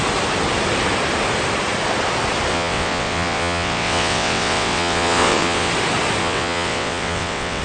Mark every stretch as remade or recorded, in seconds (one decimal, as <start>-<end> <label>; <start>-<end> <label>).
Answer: 0.0-2.5 recorded; 2.5-5.7 remade; 5.7-6.2 recorded; 6.2-7.6 remade